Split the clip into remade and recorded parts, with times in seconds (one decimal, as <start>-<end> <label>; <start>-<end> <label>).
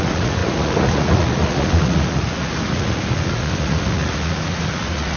0.0-5.2 remade